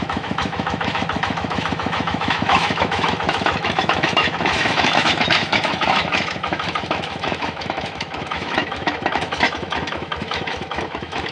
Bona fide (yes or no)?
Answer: no